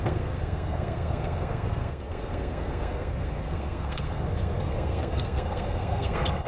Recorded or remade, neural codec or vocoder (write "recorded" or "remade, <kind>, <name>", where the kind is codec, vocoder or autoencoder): remade, codec, SNAC